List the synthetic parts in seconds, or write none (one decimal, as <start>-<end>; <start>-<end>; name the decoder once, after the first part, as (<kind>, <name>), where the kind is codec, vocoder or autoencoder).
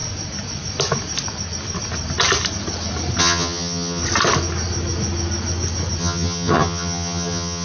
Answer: 3.2-4.0 (vocoder, HiFi-GAN); 6.0-7.6